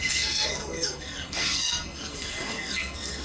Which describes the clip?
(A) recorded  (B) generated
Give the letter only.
B